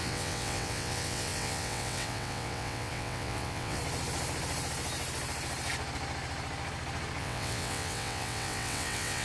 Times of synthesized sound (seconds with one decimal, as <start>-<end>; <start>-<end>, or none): 0.0-3.8; 7.2-9.2